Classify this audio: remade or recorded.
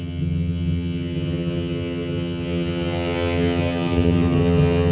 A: remade